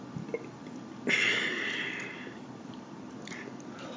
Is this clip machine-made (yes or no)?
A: no